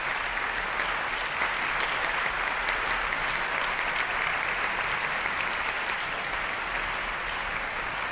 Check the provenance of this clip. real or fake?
real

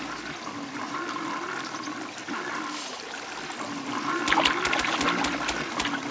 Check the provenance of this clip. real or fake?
real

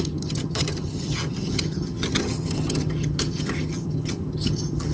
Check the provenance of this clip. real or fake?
fake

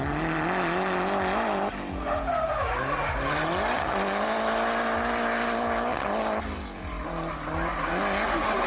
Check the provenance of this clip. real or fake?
real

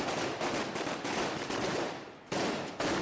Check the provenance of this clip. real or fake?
real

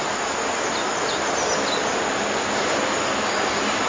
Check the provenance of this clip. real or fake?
real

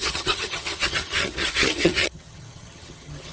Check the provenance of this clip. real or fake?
fake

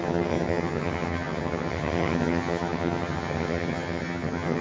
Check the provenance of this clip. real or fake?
fake